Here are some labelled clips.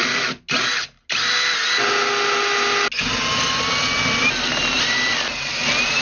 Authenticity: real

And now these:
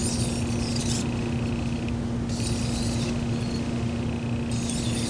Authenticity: real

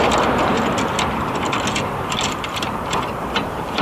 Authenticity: real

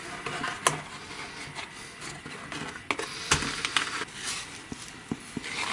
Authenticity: real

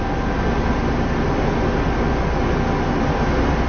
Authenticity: real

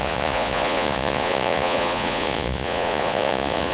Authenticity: fake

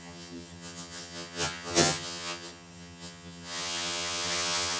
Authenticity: fake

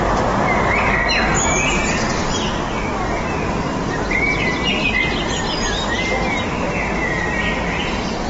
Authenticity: real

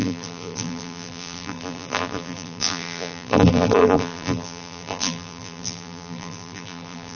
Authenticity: fake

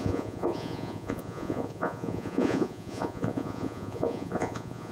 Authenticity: fake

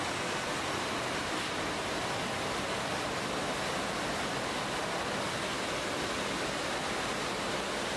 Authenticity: real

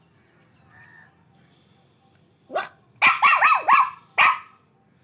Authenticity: real